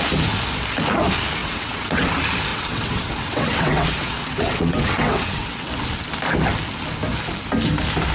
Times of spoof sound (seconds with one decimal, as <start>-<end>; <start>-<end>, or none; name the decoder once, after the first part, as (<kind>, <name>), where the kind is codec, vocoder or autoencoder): 1.4-2.1 (vocoder, WaveNeXt); 2.5-5.7